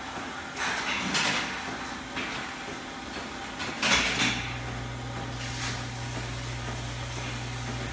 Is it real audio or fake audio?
real